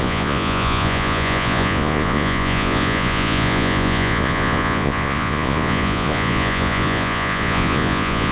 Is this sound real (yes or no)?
no